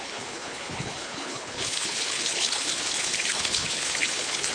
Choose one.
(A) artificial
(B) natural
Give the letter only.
A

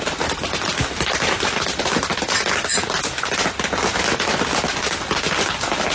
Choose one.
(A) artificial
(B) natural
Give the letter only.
B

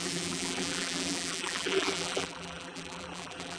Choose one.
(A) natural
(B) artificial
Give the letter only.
B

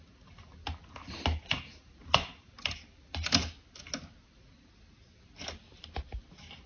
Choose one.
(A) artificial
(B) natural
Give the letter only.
B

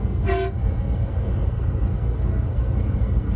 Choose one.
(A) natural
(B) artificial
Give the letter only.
B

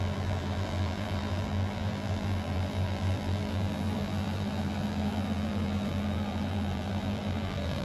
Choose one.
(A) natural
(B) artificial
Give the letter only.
B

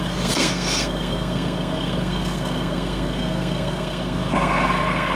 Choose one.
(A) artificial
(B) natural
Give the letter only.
A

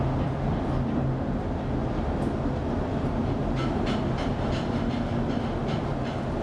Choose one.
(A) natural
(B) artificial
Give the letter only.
A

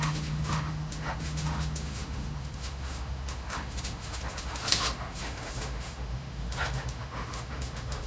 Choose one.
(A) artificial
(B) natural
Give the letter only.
A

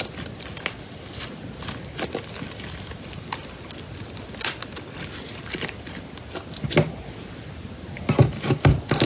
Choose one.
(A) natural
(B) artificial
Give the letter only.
A